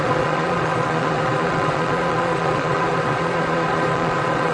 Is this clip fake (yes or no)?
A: yes